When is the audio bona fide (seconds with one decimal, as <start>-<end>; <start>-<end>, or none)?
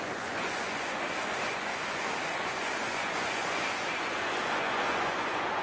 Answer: none